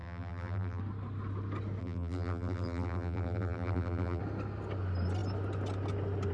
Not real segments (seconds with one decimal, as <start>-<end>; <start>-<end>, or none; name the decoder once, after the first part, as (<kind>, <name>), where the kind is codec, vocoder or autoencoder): 0.0-0.8 (vocoder, BigVGAN v2); 1.8-4.2